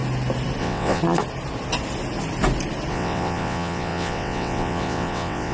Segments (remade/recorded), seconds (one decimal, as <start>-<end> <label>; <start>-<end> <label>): 0.0-0.6 recorded; 0.6-1.0 remade; 1.0-2.9 recorded; 2.9-5.5 remade